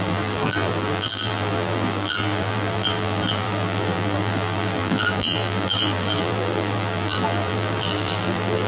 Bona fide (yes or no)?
no